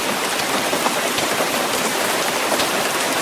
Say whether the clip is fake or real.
fake